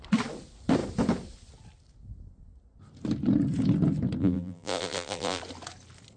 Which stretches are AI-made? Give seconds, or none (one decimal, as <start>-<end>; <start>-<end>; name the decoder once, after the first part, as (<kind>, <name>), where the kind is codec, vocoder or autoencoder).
4.2-5.4 (vocoder, BigVGAN v2)